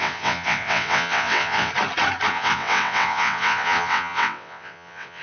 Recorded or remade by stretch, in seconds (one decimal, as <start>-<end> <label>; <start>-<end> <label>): 0.0-1.7 remade; 1.7-2.3 recorded; 2.3-5.2 remade